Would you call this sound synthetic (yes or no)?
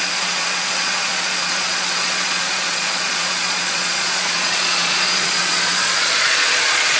yes